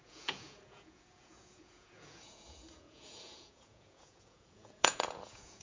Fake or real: fake